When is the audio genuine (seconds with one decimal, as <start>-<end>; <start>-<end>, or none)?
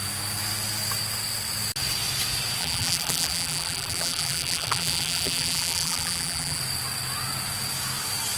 0.0-2.6; 6.6-8.4